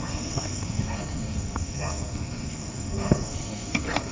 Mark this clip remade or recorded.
remade